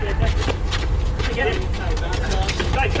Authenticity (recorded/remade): recorded